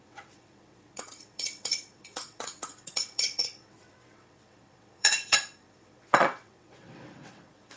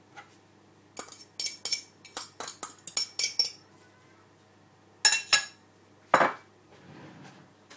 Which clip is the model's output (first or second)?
first